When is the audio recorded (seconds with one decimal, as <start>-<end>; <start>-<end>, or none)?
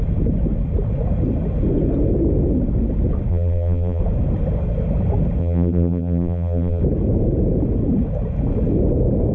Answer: 0.0-3.3; 4.0-5.4; 6.8-9.3